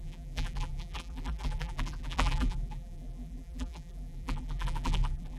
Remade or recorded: remade